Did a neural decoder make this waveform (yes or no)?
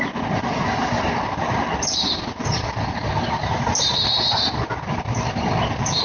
no